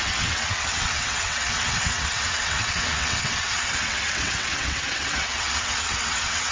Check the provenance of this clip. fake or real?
fake